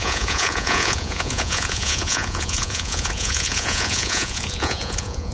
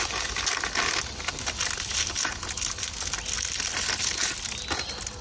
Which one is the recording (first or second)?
second